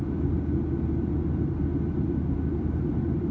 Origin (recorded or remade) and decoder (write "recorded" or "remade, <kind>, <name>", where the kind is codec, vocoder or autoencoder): recorded